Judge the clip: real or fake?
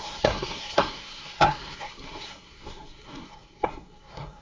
fake